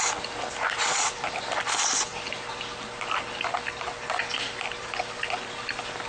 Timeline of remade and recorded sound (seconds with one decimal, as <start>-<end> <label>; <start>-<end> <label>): 0.0-6.1 recorded